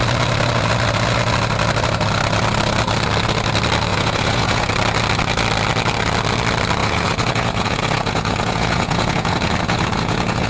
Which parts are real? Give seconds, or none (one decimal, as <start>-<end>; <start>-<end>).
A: 0.0-3.9; 4.7-6.8